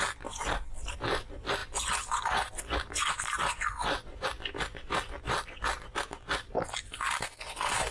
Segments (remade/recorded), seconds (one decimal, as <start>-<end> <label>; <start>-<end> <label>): 0.0-7.9 recorded